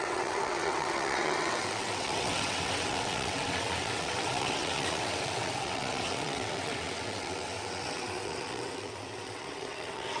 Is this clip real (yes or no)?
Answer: no